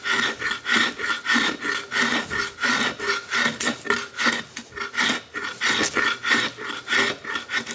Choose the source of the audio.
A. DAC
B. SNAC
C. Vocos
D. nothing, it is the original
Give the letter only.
D